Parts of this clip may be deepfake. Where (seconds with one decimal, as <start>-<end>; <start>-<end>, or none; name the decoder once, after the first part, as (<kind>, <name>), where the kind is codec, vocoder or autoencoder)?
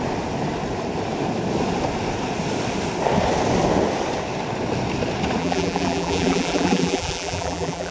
5.4-7.9 (vocoder, BigVGAN v2)